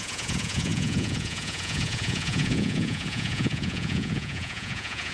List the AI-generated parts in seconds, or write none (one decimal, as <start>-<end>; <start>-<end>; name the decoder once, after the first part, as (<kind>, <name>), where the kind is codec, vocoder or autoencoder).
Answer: 0.0-5.1 (vocoder, Vocos)